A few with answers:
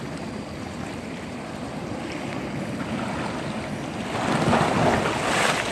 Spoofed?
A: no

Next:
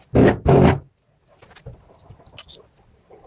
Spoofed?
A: no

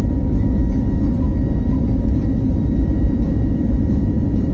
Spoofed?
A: yes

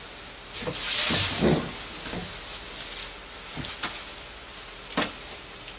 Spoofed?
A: no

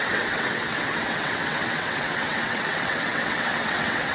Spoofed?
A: yes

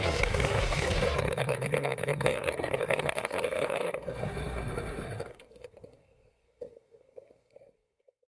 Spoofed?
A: yes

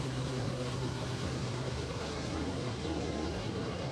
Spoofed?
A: yes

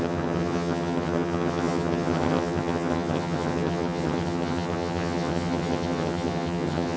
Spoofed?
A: yes